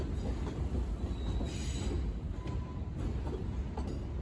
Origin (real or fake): real